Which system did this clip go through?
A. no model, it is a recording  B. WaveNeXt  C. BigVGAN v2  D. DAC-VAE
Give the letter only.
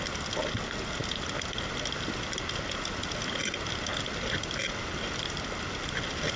A